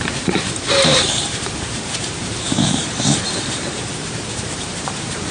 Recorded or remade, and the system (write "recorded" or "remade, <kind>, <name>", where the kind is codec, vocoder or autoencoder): remade, vocoder, BigVGAN v2